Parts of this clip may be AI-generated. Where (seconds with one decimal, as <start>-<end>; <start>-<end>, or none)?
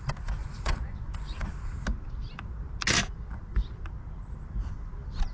0.4-1.5